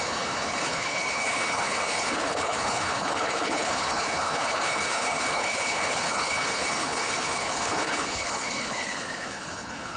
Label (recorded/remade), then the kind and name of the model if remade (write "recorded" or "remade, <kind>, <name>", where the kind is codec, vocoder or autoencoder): remade, codec, HILCodec